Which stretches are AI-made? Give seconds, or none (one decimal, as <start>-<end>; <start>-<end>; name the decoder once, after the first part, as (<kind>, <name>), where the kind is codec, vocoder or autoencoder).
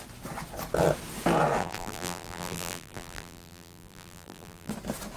1.6-4.7 (vocoder, BigVGAN v2)